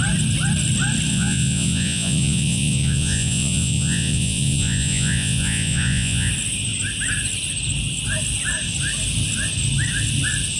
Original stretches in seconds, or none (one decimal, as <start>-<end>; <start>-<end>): 0.0-1.1; 6.3-10.6